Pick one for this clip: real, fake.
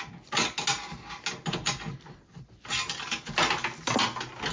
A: real